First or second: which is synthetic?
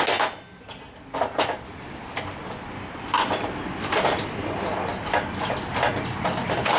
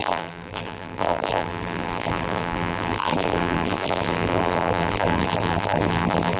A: second